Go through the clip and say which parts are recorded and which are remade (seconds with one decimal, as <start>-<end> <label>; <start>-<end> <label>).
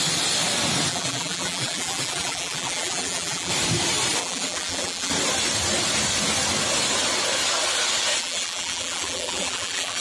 0.0-0.9 recorded; 0.9-3.5 remade; 3.5-4.2 recorded; 4.2-5.1 remade; 5.1-8.2 recorded; 8.2-10.0 remade